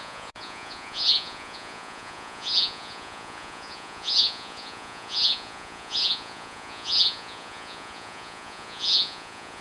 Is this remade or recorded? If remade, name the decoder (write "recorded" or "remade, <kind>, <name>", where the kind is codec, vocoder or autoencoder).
remade, vocoder, Vocos